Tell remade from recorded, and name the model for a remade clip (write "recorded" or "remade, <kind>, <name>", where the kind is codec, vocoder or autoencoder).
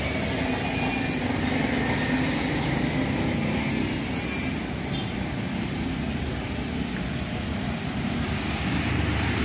recorded